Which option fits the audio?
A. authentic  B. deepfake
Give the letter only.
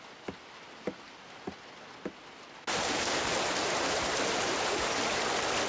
A